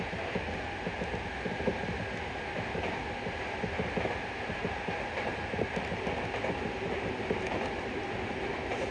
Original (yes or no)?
yes